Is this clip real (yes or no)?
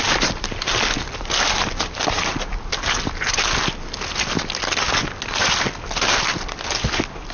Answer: yes